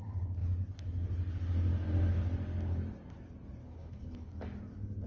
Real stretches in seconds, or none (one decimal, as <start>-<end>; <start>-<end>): 0.0-3.6; 4.3-5.1